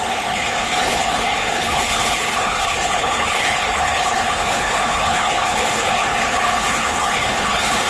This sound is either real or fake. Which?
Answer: fake